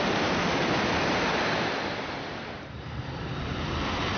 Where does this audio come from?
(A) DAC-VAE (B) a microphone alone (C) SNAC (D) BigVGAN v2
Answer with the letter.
D